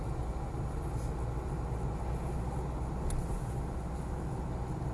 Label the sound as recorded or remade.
recorded